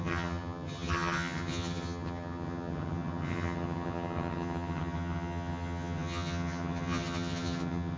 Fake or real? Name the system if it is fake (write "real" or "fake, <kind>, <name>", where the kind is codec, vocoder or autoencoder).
fake, vocoder, HiFi-GAN